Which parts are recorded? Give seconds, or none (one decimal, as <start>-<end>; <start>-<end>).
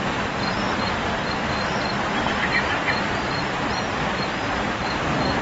0.0-5.4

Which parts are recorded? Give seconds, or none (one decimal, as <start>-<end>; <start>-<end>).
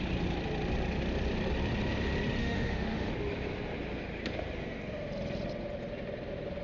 0.0-2.4; 3.1-6.6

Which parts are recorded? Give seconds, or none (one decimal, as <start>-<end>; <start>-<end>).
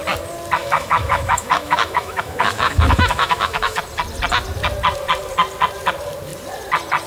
0.0-0.6; 3.8-7.1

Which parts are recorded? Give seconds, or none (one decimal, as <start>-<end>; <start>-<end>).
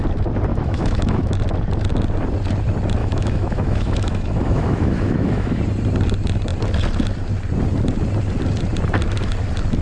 0.0-0.5; 1.3-3.0; 5.6-9.8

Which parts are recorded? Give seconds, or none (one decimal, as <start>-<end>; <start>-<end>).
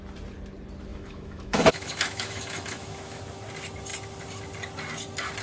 0.0-0.9; 3.2-5.4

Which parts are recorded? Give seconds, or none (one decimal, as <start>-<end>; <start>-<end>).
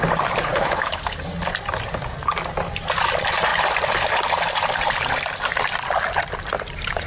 0.0-0.5; 1.0-7.1